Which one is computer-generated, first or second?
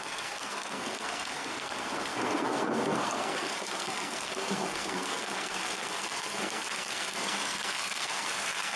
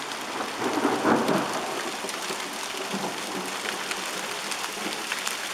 first